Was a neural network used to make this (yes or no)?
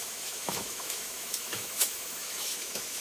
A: yes